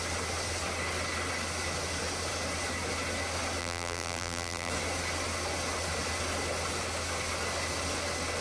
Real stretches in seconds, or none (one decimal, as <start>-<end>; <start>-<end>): 0.0-3.6; 4.7-8.4